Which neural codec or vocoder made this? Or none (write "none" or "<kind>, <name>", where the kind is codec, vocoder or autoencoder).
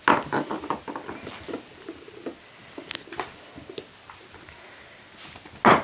none